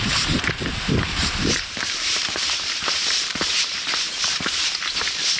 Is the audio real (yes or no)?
no